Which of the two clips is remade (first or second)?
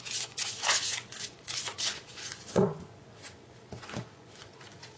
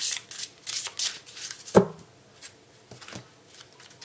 first